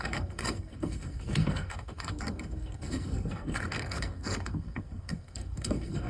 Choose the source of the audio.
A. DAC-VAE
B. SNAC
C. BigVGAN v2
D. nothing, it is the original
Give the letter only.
B